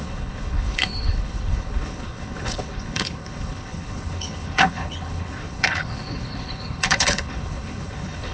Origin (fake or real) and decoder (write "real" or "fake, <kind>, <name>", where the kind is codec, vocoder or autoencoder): fake, codec, HILCodec